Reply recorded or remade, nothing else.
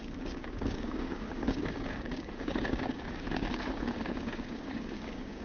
remade